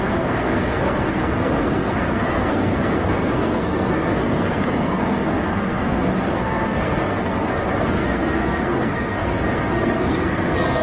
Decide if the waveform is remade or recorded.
remade